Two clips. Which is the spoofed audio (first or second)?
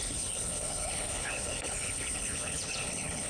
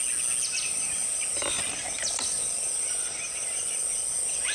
first